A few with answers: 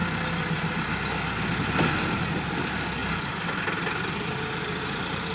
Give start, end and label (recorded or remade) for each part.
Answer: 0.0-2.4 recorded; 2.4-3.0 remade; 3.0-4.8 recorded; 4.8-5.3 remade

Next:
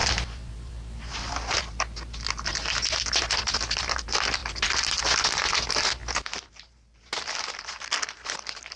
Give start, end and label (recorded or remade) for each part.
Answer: 0.0-8.8 recorded